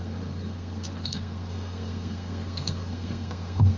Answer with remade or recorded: remade